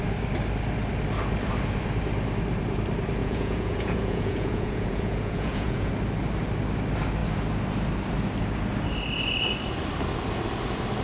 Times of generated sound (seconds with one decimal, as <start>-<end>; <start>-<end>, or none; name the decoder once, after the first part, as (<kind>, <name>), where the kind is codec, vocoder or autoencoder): 3.2-5.9 (vocoder, Vocos)